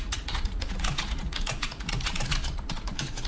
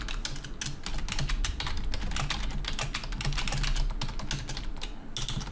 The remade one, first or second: first